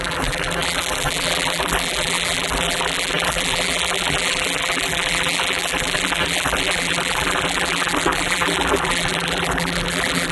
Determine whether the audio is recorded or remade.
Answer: remade